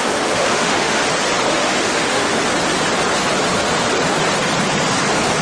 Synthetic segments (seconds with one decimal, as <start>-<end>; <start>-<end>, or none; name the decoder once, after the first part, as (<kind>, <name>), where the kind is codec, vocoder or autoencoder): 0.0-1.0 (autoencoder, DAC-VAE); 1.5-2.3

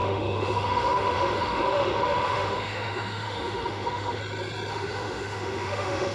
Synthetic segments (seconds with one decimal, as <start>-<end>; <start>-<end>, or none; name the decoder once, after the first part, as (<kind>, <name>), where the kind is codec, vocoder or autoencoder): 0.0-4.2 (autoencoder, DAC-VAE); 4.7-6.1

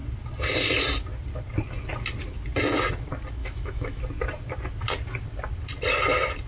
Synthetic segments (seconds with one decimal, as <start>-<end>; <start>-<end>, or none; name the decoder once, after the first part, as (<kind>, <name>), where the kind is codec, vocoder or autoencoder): 3.4-4.0 (autoencoder, DAC-VAE)

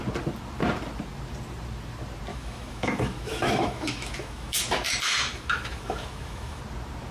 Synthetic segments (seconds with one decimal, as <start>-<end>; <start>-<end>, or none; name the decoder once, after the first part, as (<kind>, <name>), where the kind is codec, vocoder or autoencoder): 2.3-6.6 (autoencoder, DAC-VAE)